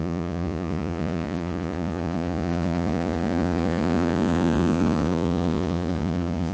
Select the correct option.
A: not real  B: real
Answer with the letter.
A